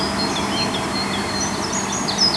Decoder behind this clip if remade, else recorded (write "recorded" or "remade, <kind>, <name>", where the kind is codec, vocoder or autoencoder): recorded